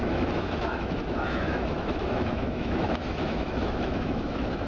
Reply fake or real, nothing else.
fake